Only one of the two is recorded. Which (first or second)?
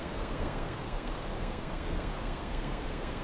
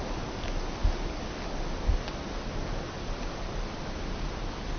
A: second